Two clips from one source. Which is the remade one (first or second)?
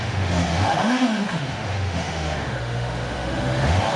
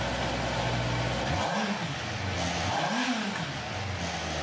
first